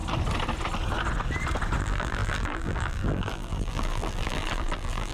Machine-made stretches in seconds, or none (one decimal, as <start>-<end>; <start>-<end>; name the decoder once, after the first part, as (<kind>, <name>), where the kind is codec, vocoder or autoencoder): 1.8-5.1 (vocoder, BigVGAN v2)

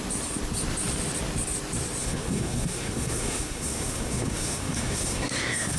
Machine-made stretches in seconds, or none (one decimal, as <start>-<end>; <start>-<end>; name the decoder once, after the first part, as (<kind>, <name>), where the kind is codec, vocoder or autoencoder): 2.0-5.8 (codec, SNAC)

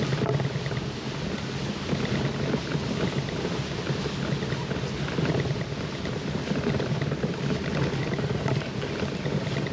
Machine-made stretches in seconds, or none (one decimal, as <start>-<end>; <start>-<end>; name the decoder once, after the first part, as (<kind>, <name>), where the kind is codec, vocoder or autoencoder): none

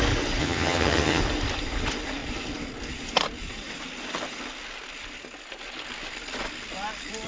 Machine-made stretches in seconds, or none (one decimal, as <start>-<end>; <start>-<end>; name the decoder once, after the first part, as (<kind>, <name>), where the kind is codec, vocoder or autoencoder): 0.4-1.2 (vocoder, HiFi-GAN)

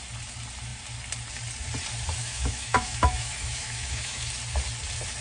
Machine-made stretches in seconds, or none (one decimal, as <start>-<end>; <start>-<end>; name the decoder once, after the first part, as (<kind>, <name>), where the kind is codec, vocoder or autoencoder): 2.2-4.3 (autoencoder, DAC-VAE)

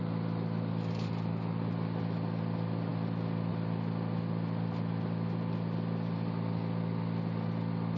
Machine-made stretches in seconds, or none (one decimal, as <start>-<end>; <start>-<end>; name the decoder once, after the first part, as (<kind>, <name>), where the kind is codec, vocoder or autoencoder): none